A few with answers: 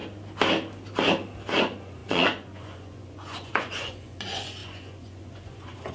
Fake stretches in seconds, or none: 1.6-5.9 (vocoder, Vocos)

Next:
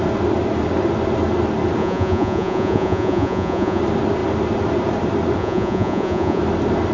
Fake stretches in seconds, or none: 1.8-3.8 (vocoder, Vocos); 5.4-6.4

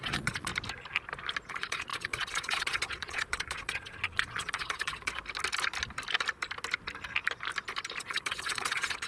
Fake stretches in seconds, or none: 0.0-0.5 (vocoder, Vocos); 1.5-5.2; 8.0-9.1

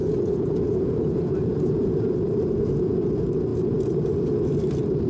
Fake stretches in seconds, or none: 0.0-3.1 (vocoder, Vocos)

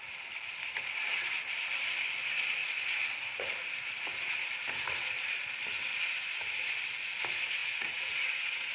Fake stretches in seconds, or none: 2.6-4.5 (vocoder, Vocos); 7.6-8.7

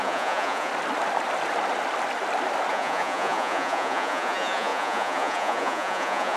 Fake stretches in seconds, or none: 0.0-0.7 (vocoder, Vocos); 2.7-6.4